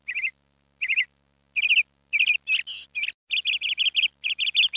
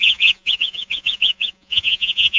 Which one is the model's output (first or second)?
second